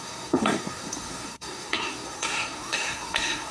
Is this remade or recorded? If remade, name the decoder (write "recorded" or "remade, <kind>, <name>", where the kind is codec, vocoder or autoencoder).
remade, codec, SNAC